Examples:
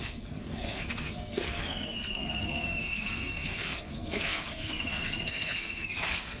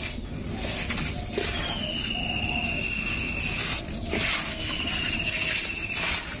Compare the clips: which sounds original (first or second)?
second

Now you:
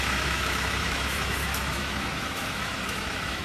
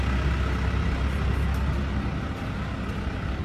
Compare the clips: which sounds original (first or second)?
second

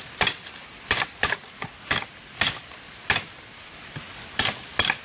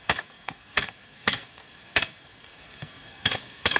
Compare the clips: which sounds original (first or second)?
first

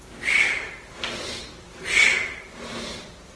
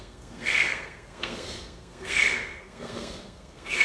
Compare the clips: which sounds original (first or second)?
first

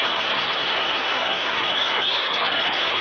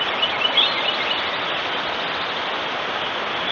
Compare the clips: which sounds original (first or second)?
second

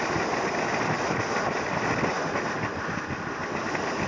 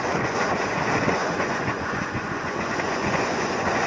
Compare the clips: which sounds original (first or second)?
first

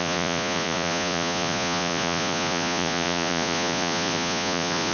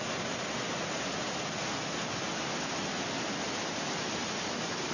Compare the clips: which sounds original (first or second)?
second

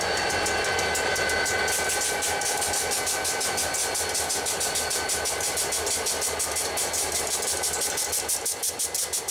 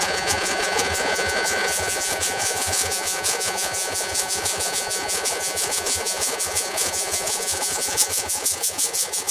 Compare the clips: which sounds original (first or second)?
first